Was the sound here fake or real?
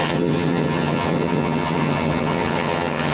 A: fake